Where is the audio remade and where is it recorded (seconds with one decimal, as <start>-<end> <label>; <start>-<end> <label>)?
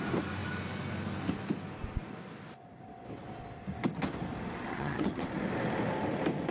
0.0-4.7 recorded; 4.7-5.2 remade; 5.2-6.5 recorded